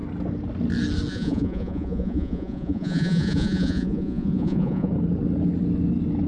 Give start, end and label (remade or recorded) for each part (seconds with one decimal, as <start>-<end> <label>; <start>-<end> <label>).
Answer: 0.0-1.1 recorded; 1.1-4.9 remade; 4.9-6.3 recorded